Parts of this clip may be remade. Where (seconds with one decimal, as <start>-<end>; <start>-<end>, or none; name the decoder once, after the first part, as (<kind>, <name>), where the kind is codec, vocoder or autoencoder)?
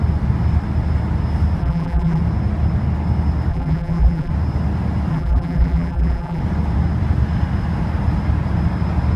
1.6-2.2 (vocoder, BigVGAN v2); 3.5-4.3; 5.1-6.4